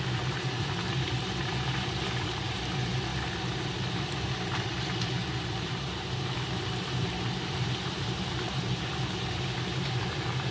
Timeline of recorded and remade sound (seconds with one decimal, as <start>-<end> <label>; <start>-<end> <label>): 0.0-3.1 remade; 3.1-3.9 recorded; 3.9-10.5 remade